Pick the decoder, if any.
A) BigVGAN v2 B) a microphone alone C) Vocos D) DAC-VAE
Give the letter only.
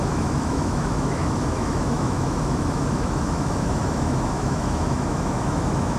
D